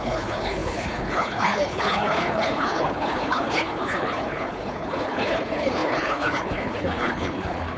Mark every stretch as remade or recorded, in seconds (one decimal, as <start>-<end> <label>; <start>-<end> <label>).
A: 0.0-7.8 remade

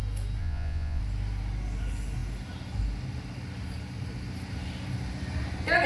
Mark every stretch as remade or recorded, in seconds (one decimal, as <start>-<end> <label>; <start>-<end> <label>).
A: 0.0-0.4 recorded; 0.4-1.0 remade; 1.0-5.9 recorded

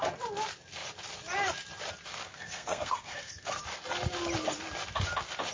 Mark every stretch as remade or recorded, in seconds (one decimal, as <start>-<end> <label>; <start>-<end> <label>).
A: 0.0-2.1 recorded; 2.1-3.6 remade; 3.6-5.5 recorded

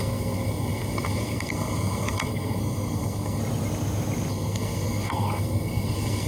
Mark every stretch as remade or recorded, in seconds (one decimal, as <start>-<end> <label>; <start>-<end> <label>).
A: 0.0-3.4 remade; 3.4-4.3 recorded; 4.3-6.3 remade